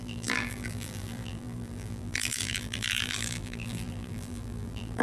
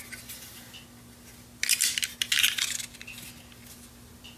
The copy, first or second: first